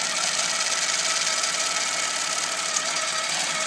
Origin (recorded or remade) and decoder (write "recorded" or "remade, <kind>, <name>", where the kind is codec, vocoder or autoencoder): recorded